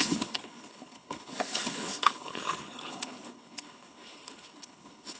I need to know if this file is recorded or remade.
remade